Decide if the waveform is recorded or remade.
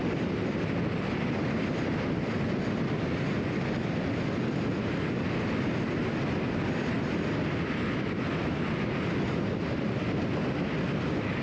recorded